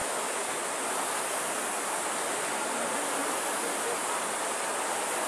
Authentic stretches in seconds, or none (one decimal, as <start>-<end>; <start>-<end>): 0.6-5.3